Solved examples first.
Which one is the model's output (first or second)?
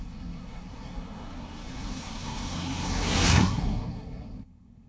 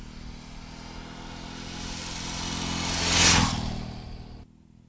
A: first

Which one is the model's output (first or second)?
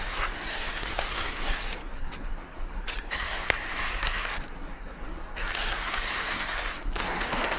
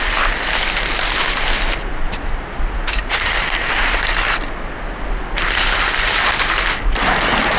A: first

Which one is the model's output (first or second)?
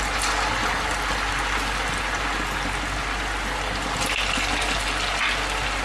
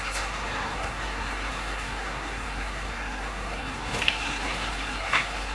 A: second